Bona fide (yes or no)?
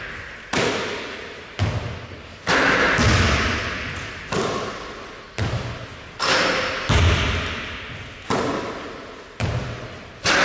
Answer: yes